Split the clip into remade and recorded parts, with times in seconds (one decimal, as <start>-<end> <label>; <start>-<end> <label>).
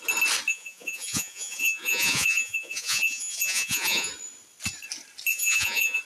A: 0.0-0.5 recorded; 0.5-4.1 remade; 4.1-5.3 recorded; 5.3-6.0 remade